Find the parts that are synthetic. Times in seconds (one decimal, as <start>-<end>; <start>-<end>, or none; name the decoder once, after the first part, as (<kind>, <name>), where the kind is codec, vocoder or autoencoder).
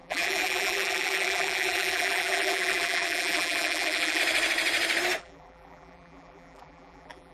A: 0.0-4.2 (vocoder, BigVGAN v2); 5.2-7.3